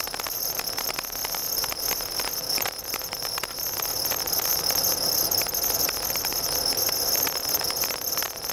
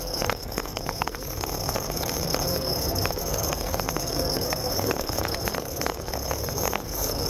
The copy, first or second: second